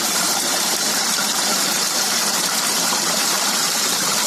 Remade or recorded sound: remade